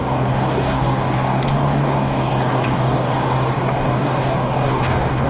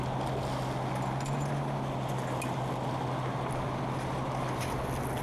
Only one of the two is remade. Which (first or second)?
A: first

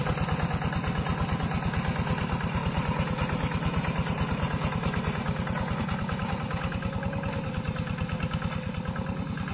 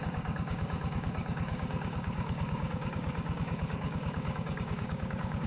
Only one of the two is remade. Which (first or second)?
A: second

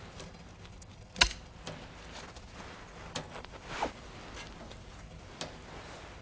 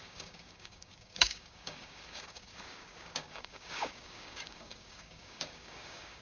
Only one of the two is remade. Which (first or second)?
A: second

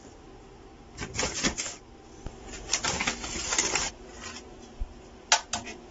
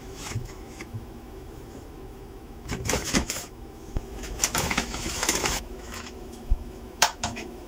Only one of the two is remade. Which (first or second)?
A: second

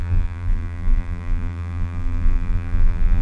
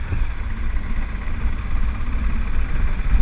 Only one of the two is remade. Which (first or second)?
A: first